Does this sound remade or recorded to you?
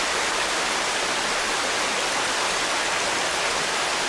recorded